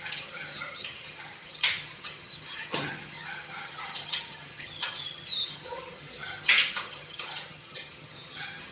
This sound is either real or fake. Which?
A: fake